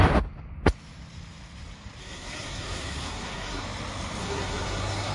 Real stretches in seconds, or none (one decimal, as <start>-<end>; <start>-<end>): 0.0-2.0; 3.6-4.2